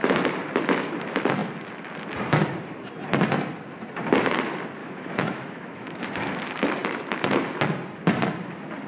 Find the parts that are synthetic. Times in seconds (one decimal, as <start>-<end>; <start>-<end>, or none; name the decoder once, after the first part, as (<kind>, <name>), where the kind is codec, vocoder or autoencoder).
4.8-6.0 (autoencoder, DAC-VAE)